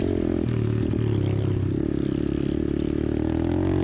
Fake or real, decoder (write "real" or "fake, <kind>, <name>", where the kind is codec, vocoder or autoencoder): real